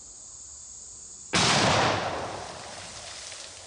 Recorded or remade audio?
recorded